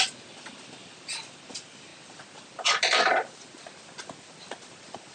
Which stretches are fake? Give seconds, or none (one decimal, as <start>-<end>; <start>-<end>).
none